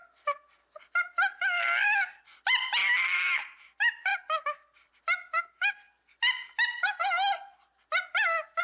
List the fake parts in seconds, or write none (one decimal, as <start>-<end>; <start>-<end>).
2.8-3.6